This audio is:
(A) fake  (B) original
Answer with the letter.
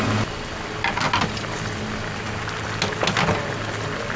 B